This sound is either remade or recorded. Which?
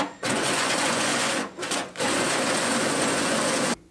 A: remade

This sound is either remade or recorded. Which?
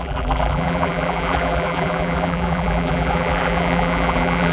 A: remade